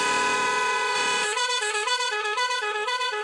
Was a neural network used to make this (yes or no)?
yes